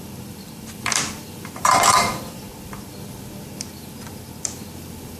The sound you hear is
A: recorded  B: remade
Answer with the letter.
B